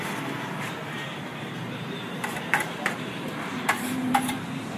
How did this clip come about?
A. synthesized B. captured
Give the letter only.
A